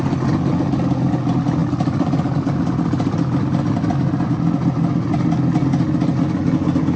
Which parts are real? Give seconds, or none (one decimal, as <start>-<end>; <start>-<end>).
0.0-7.0